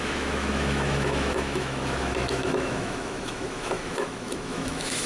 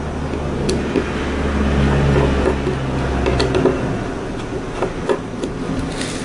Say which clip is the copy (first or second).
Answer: first